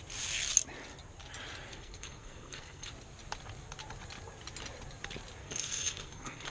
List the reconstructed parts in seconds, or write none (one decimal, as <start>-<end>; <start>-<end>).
1.7-2.9; 5.4-6.5